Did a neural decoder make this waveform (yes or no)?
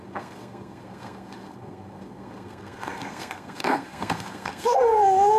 yes